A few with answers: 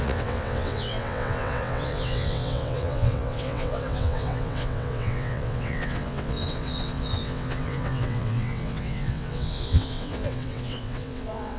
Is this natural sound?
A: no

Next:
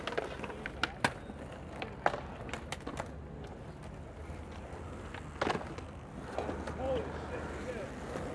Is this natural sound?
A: yes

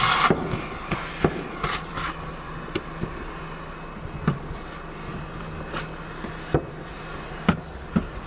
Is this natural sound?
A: yes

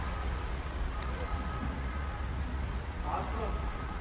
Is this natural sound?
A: no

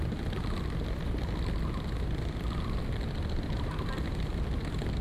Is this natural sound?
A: yes